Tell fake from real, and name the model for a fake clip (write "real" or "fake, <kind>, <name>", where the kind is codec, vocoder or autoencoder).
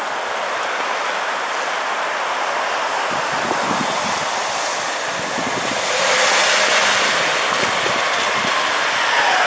real